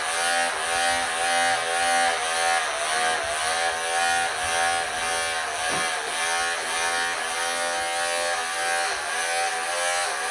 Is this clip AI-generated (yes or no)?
no